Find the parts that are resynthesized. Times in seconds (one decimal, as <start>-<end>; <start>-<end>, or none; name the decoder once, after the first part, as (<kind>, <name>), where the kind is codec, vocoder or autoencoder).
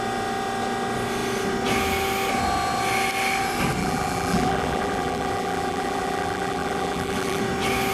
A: 3.8-7.4 (vocoder, BigVGAN v2)